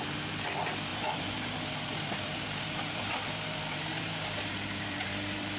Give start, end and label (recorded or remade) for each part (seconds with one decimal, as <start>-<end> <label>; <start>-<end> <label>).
0.0-5.6 remade